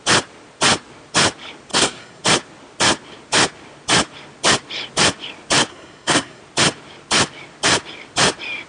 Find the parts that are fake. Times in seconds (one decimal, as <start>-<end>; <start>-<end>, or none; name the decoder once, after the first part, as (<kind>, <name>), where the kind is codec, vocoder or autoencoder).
1.7-2.2 (codec, SNAC); 5.7-6.4